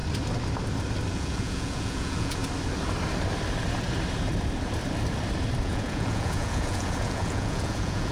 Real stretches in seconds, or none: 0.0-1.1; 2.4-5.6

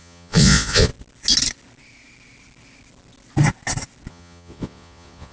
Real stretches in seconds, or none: 0.9-4.1

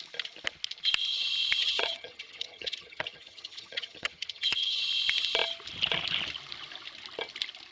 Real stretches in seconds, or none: 0.0-1.6; 4.8-7.7

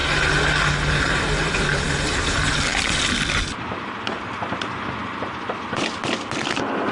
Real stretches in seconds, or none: 0.0-6.9

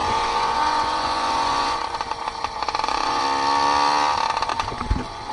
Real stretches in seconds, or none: 3.2-4.5